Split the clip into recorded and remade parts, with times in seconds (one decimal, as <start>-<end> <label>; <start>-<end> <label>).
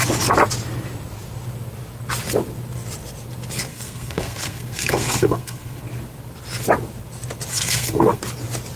0.0-3.7 recorded; 3.7-5.8 remade; 5.8-7.5 recorded; 7.5-8.2 remade; 8.2-8.8 recorded